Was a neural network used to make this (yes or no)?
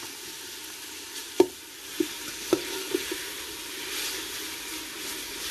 no